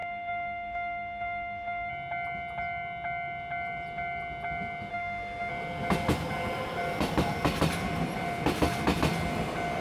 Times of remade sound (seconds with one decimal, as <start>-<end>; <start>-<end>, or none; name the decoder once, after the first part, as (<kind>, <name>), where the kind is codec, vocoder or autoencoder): 0.0-1.9 (autoencoder, DAC-VAE); 4.9-5.5